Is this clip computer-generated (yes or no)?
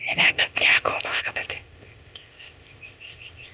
yes